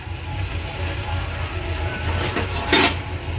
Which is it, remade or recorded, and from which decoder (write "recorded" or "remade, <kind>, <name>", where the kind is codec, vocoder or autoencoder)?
remade, vocoder, BigVGAN v2